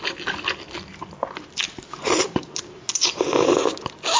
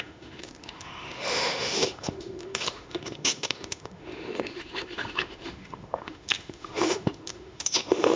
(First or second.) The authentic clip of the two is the first